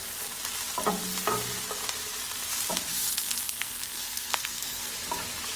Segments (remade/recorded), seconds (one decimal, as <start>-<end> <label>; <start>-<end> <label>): 0.0-2.9 recorded; 2.9-4.9 remade; 4.9-5.6 recorded